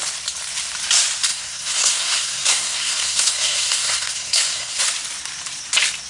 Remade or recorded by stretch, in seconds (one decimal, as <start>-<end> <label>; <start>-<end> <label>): 0.0-1.3 recorded; 1.3-4.8 remade; 4.8-6.1 recorded